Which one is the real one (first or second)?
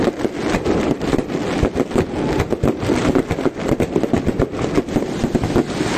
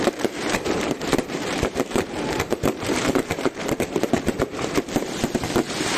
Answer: first